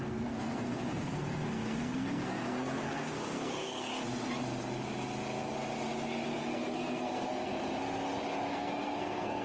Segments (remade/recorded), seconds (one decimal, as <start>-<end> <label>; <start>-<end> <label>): 0.0-3.9 remade; 3.9-6.4 recorded; 6.4-7.5 remade; 7.5-8.5 recorded; 8.5-9.4 remade